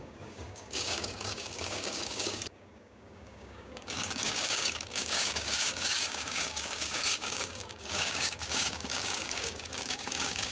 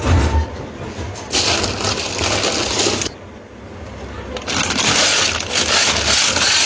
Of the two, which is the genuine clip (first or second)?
second